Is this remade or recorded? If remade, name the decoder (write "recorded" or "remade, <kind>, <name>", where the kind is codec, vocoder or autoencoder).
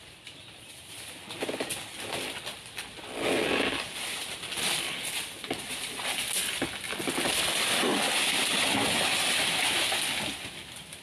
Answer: recorded